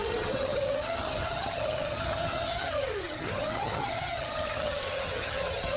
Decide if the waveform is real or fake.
fake